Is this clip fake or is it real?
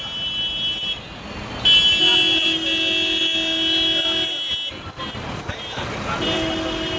real